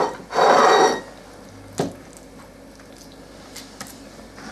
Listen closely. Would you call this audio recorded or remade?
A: recorded